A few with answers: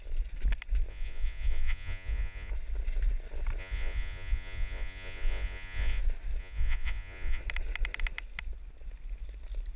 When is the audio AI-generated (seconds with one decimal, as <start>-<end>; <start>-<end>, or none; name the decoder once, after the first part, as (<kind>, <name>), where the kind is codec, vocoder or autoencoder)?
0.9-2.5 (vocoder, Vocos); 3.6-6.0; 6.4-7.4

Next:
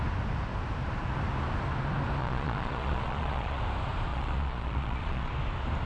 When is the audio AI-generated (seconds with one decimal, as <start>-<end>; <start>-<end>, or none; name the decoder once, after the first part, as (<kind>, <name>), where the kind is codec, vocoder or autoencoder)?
2.2-3.6 (vocoder, Vocos); 4.1-5.3

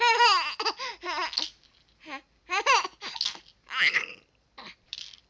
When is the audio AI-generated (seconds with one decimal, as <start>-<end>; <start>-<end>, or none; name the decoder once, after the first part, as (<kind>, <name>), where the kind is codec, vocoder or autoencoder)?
none

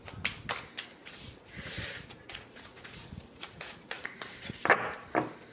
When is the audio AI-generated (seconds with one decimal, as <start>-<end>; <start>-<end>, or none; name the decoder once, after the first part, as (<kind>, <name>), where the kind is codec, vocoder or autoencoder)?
1.0-4.3 (vocoder, Vocos)

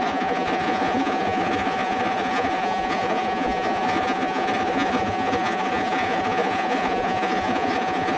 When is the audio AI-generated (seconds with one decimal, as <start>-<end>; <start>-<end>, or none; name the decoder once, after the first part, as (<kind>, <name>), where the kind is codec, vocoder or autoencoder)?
0.0-8.2 (vocoder, Vocos)

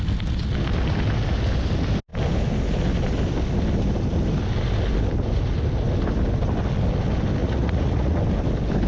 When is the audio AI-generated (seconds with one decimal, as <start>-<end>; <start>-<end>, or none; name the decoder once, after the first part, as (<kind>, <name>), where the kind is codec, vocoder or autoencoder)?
7.4-8.2 (vocoder, Vocos)